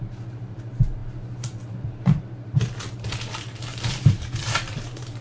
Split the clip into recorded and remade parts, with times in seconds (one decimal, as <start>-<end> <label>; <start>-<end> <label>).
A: 0.0-5.2 remade

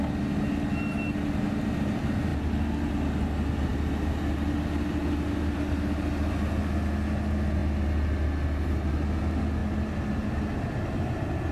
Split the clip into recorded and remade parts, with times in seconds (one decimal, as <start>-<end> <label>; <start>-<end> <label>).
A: 0.0-11.5 recorded

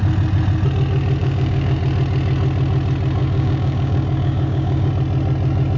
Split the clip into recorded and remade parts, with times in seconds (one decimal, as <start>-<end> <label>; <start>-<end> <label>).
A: 0.0-1.2 recorded; 1.2-1.8 remade; 1.8-3.2 recorded; 3.2-4.9 remade; 4.9-5.8 recorded

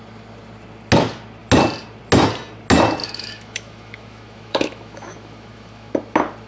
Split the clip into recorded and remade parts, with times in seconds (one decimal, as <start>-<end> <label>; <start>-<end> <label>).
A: 0.0-3.0 recorded; 3.0-5.9 remade; 5.9-6.5 recorded